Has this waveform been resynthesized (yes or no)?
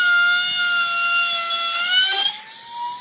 no